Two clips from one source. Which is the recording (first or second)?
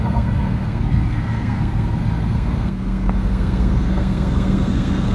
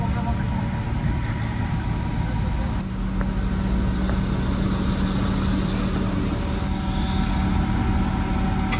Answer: second